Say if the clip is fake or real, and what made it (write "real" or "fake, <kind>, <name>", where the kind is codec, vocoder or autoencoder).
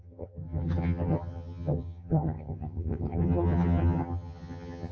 fake, vocoder, HiFi-GAN